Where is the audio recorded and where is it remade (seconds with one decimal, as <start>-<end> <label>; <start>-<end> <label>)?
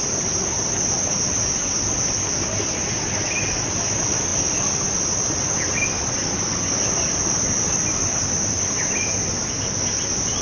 0.0-10.4 recorded